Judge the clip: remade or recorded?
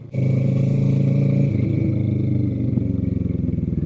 recorded